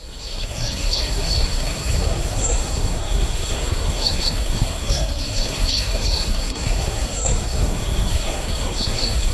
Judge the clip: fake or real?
fake